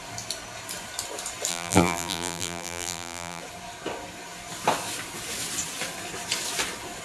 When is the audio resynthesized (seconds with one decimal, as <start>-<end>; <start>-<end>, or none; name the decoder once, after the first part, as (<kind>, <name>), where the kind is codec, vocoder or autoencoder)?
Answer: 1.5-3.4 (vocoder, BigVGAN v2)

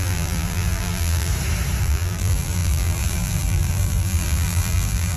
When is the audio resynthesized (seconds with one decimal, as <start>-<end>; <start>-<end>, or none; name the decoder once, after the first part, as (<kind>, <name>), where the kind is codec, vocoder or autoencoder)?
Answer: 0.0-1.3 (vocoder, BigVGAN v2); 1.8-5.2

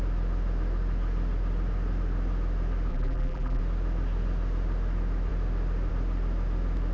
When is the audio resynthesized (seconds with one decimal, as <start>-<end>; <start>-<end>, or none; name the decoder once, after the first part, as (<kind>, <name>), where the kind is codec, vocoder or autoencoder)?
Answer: 2.9-3.6 (vocoder, BigVGAN v2)

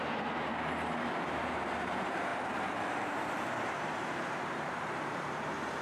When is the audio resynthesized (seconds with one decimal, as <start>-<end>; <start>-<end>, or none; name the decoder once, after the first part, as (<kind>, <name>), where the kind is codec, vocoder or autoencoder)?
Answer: 0.0-5.8 (vocoder, BigVGAN v2)

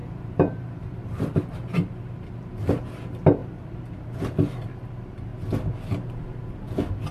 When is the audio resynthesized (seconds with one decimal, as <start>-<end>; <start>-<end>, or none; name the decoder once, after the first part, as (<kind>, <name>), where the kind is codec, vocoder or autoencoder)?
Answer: 0.0-1.4 (vocoder, BigVGAN v2); 3.4-4.2